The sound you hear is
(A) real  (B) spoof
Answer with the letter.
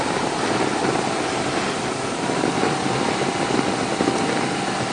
A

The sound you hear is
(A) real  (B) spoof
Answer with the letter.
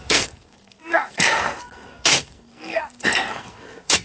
B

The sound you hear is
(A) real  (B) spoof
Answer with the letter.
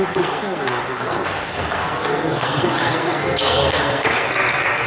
B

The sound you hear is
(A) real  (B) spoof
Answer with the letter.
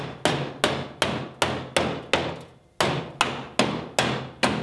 A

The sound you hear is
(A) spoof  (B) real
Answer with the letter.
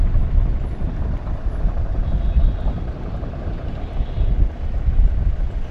B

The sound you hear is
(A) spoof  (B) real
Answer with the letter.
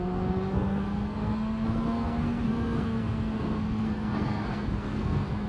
A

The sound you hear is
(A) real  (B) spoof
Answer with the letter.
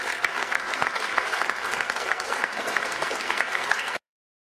B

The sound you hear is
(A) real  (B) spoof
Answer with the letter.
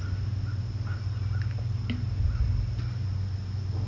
A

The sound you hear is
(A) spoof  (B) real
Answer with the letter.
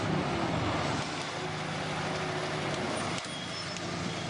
B